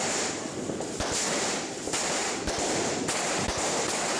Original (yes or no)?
yes